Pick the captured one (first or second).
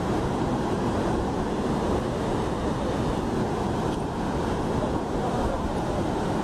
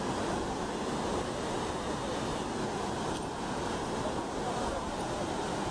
second